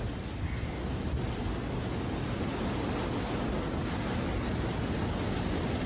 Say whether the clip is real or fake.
real